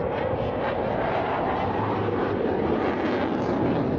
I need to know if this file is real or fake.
real